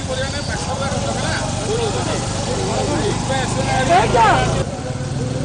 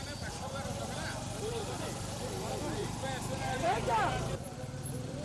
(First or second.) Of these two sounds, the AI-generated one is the second